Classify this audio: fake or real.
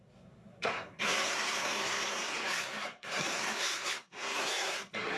fake